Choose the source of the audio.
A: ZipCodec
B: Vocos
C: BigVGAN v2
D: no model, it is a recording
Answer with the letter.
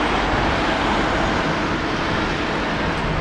D